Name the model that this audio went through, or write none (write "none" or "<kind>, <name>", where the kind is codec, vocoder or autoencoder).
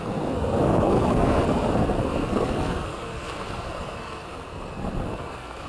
codec, SNAC